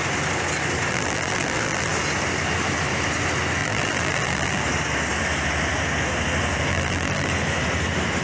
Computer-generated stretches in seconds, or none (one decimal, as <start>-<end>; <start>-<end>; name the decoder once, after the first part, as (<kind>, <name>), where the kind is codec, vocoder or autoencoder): 0.9-1.9 (vocoder, BigVGAN v2); 3.6-4.6; 6.7-7.3